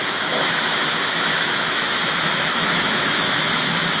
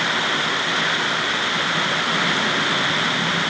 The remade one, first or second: first